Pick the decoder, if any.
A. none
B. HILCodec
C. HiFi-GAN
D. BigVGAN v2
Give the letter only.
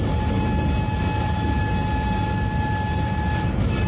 A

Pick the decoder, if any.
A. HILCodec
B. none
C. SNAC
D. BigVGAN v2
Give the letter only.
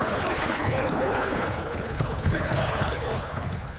A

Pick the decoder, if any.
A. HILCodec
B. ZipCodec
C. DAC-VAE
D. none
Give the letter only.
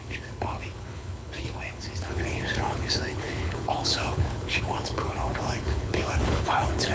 A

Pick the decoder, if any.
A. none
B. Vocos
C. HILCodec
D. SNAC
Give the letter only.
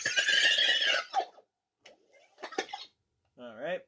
A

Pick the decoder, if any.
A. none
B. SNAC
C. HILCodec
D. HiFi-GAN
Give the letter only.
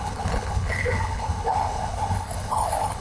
C